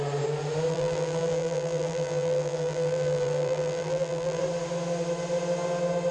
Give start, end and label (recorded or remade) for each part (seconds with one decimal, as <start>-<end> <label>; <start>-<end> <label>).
0.0-0.7 recorded; 0.7-4.4 remade; 4.4-6.1 recorded